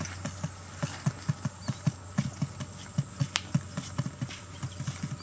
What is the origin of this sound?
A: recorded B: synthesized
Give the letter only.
A